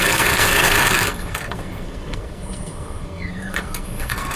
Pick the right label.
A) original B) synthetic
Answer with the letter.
B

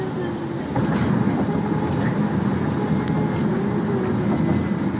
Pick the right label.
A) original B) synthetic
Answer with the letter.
A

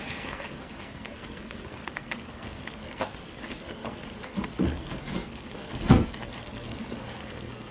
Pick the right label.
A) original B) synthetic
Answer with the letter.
B